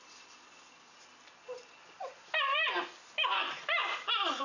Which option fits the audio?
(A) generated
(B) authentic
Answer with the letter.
B